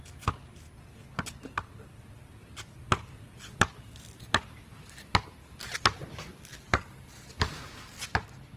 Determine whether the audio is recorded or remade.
recorded